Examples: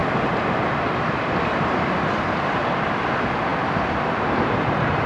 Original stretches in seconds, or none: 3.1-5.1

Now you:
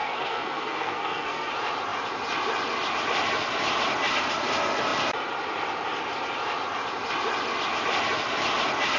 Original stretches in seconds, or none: 1.5-9.0